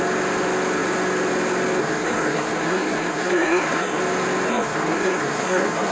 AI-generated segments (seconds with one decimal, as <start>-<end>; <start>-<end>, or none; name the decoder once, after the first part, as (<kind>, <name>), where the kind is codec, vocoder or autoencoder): 1.8-4.0 (codec, SNAC); 4.5-5.9